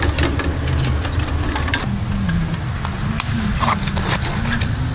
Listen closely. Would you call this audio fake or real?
real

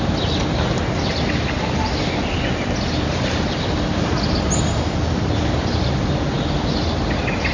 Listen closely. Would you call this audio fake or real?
real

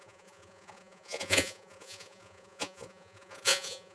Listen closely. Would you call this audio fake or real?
fake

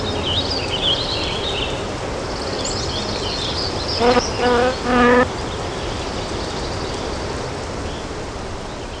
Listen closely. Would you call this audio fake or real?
real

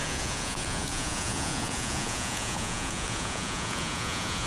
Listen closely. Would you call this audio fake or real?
fake